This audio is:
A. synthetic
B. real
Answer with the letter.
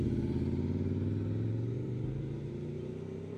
A